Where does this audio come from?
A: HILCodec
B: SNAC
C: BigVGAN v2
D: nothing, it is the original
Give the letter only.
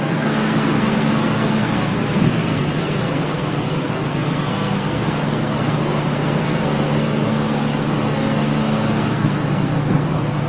B